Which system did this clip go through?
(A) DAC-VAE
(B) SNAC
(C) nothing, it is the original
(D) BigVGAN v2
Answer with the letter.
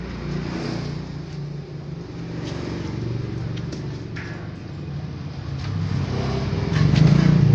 C